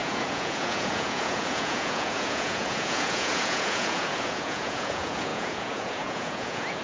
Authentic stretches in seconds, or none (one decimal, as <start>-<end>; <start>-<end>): none